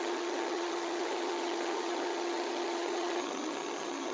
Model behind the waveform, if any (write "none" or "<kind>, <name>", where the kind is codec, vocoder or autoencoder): vocoder, HiFi-GAN